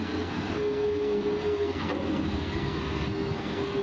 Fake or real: fake